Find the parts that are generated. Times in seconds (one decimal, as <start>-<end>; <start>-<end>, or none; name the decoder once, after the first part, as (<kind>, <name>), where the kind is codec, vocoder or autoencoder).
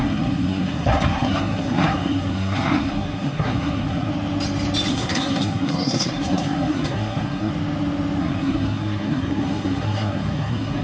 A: 0.0-4.1 (codec, SNAC); 4.9-7.5; 8.2-10.8